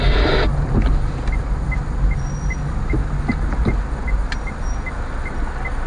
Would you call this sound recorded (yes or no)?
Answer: yes